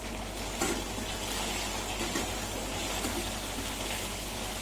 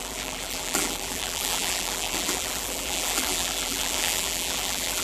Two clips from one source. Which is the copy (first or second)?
second